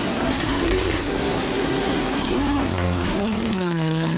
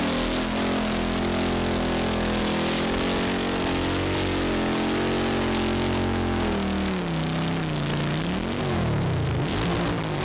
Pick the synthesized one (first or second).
first